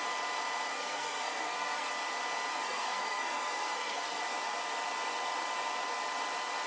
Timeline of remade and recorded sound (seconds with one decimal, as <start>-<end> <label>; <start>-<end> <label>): 0.0-0.7 recorded; 0.7-1.9 remade; 1.9-2.5 recorded; 2.5-4.2 remade; 4.2-6.7 recorded